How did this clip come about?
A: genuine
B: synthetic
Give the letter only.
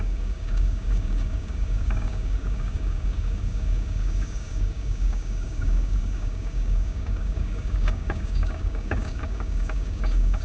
B